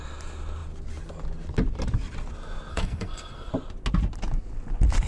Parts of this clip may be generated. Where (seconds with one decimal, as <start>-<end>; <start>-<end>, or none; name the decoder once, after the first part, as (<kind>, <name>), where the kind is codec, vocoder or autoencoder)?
2.7-3.5 (codec, SNAC)